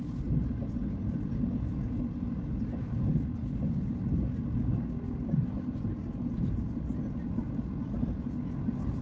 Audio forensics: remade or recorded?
recorded